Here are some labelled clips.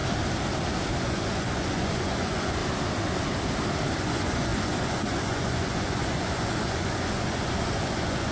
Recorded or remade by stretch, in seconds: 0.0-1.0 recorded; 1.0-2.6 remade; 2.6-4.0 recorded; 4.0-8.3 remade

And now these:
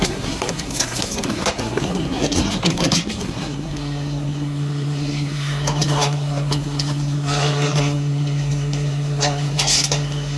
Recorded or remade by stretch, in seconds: 0.0-10.4 remade